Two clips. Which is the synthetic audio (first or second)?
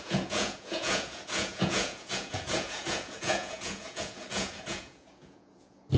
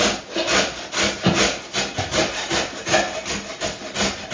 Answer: first